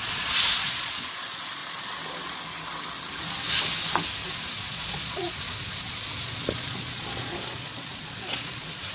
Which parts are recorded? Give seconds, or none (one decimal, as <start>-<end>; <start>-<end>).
1.6-4.3